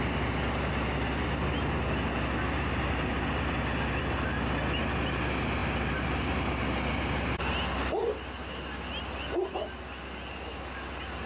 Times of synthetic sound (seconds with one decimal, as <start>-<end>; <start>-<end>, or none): none